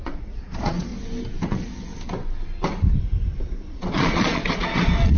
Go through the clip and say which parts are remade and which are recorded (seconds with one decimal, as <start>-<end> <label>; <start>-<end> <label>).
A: 0.0-0.9 remade; 0.9-1.5 recorded; 1.5-1.9 remade; 1.9-3.7 recorded; 3.7-5.2 remade

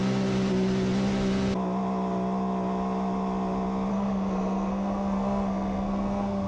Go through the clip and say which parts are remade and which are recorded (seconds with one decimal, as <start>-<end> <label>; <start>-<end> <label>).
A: 0.0-3.9 recorded; 3.9-6.5 remade